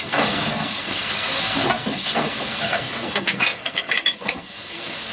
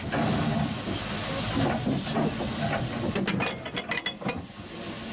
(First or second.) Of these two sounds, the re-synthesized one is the first